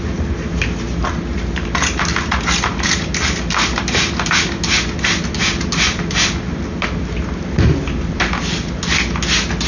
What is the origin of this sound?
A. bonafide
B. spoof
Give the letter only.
A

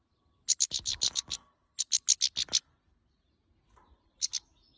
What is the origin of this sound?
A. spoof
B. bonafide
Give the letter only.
B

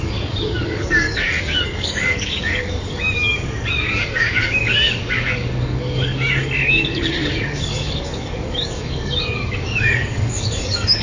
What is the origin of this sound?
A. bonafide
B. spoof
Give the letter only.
B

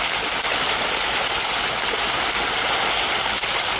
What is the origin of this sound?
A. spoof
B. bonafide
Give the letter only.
B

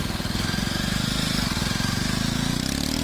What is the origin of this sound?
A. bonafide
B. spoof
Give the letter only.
A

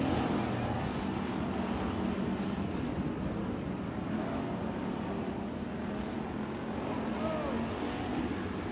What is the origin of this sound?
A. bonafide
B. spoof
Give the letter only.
A